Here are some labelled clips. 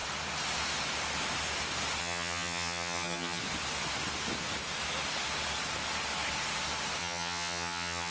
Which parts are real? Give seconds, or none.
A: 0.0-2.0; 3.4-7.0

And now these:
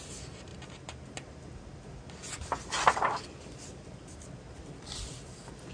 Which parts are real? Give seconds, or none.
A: 0.0-5.7

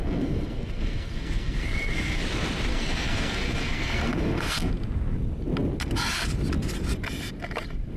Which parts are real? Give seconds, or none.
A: 2.2-2.7; 4.7-8.0

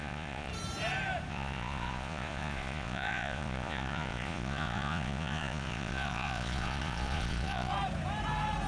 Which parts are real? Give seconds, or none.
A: 0.5-1.3; 7.7-8.7

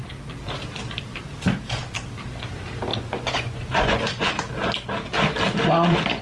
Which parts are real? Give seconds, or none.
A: 0.0-2.9; 4.5-6.2

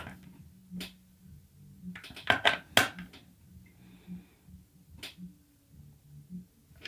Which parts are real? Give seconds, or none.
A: 0.0-6.9